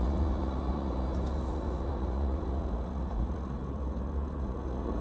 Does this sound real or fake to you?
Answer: fake